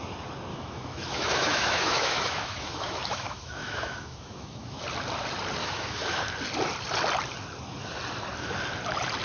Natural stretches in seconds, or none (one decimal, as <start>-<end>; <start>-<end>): 0.0-0.5; 4.8-5.6; 6.2-9.2